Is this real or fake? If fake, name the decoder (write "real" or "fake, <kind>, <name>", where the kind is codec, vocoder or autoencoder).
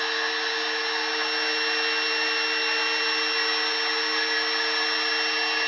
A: real